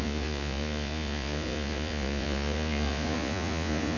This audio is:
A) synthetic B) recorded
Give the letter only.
A